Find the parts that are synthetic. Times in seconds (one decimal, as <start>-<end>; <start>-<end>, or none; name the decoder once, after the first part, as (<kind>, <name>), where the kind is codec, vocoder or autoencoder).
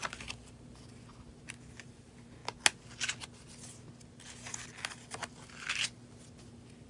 0.0-2.4 (vocoder, BigVGAN v2); 6.5-6.9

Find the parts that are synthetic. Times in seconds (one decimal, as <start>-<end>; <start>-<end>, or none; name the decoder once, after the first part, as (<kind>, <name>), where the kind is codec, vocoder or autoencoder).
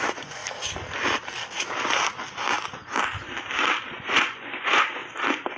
0.0-0.4 (vocoder, Vocos); 3.8-5.0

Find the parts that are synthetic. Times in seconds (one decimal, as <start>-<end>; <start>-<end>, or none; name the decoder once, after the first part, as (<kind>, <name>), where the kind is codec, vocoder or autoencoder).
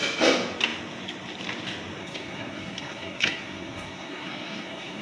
2.0-5.0 (codec, SNAC)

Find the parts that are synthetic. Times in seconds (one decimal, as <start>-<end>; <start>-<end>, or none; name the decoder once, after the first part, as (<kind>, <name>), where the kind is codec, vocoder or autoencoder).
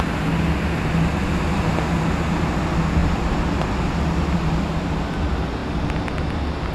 3.0-3.7 (vocoder, BigVGAN v2)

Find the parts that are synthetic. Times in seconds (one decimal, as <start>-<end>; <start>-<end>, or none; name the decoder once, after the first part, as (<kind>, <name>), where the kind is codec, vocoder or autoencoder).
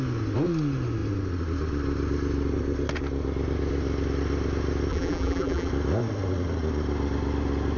4.9-5.7 (vocoder, BigVGAN v2)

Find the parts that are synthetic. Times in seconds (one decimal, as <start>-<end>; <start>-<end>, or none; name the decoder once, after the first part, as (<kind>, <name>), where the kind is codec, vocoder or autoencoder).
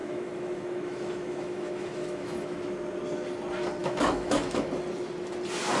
0.0-2.7 (autoencoder, DAC-VAE); 3.8-4.7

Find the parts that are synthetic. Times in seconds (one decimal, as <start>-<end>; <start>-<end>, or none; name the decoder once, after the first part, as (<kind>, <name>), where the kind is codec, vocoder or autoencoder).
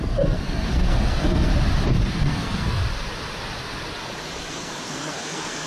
0.0-1.5 (codec, SNAC); 2.1-2.8; 4.5-5.7